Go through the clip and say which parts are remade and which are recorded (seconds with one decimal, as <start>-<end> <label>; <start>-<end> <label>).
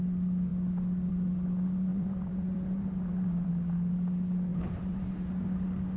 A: 0.0-1.9 recorded; 1.9-3.5 remade; 3.5-4.5 recorded; 4.5-5.3 remade; 5.3-6.0 recorded